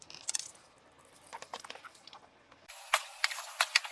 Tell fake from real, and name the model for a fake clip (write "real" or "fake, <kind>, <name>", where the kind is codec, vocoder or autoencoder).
real